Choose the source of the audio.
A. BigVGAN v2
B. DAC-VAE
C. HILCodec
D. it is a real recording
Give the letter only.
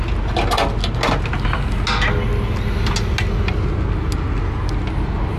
D